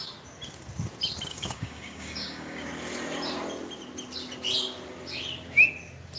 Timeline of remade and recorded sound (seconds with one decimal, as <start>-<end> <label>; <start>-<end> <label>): 0.0-1.3 recorded; 1.3-2.7 remade; 2.7-6.2 recorded